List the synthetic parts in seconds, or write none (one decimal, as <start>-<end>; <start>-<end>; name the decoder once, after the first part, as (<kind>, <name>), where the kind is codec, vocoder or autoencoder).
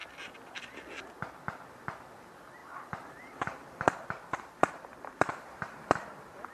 2.6-6.5 (vocoder, BigVGAN v2)